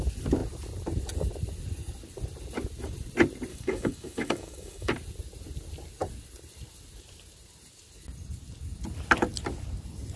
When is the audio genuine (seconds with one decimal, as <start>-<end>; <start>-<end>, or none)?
0.0-3.5; 4.9-10.2